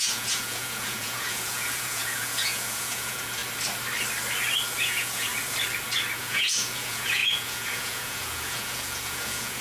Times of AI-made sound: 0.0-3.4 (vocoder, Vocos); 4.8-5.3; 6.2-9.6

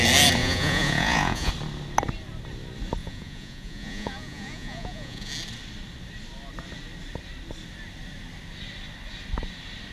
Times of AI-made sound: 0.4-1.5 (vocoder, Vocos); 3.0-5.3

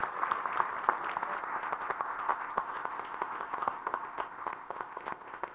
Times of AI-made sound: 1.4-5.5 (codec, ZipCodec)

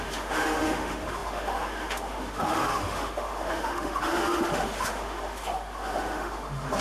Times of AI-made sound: 0.0-6.8 (autoencoder, DAC-VAE)